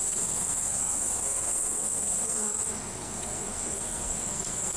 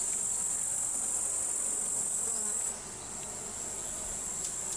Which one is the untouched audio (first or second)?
second